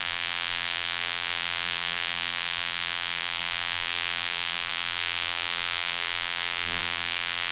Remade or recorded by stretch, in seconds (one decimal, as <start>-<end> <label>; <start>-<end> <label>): 0.0-7.5 remade

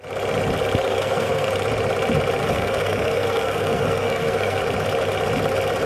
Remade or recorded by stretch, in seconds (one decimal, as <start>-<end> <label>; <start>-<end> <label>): 0.0-0.9 recorded; 0.9-1.5 remade; 1.5-2.4 recorded; 2.4-4.6 remade; 4.6-5.9 recorded

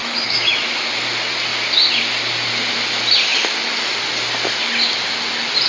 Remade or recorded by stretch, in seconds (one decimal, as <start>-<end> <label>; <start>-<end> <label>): 0.0-0.7 remade; 0.7-5.7 recorded

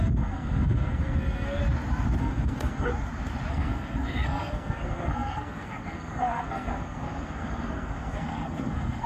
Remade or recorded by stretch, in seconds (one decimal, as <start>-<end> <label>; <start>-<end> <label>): 0.0-1.6 remade; 1.6-2.2 recorded; 2.2-2.9 remade; 2.9-3.5 recorded; 3.5-9.1 remade

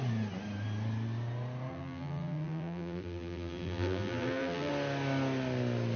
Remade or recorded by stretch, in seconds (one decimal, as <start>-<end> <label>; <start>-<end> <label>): 0.0-1.7 recorded; 1.7-4.7 remade; 4.7-6.0 recorded